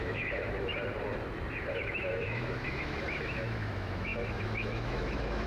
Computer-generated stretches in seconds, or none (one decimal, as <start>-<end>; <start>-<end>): 0.0-0.7; 1.6-5.5